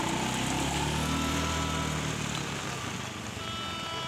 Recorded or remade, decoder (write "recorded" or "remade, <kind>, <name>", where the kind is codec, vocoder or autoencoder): recorded